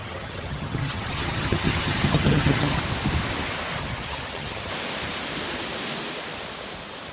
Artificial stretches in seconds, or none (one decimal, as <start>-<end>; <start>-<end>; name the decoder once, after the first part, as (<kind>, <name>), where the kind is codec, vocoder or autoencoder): 0.0-2.8 (vocoder, HiFi-GAN); 3.8-4.7